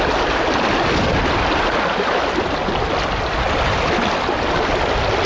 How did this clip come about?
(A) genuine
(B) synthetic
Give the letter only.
A